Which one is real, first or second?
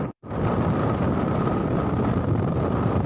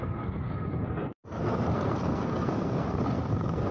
first